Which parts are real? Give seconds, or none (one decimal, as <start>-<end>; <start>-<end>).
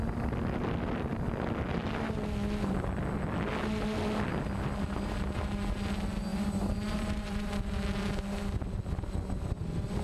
0.0-6.3; 7.5-10.0